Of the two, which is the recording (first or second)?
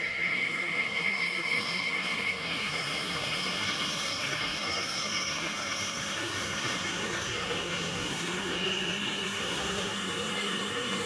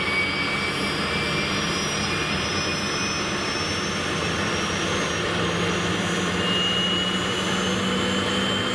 second